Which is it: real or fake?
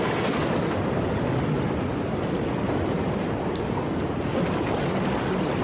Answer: real